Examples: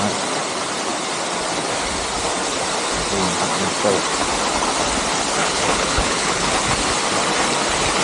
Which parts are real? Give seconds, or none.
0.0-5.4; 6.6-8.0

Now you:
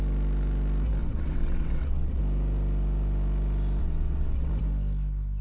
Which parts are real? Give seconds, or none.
0.0-1.0; 2.2-3.8; 4.5-5.4

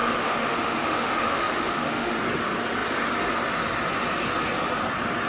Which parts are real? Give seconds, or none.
2.2-5.3